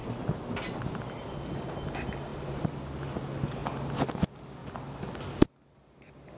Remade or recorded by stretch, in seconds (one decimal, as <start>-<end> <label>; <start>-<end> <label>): 0.0-6.4 recorded